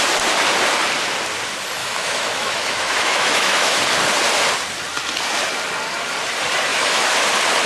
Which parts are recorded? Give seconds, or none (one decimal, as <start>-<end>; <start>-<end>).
0.0-1.8; 3.8-6.7; 7.2-7.7